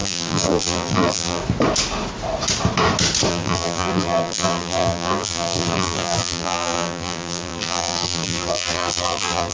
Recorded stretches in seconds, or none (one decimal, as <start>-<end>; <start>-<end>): 1.4-3.3